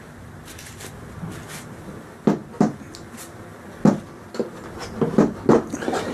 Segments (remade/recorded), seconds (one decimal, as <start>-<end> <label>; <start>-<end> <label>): 0.0-6.1 recorded